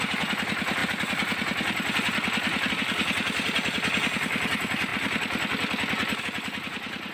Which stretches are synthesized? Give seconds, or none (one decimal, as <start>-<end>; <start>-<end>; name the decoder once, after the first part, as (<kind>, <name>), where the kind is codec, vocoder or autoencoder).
none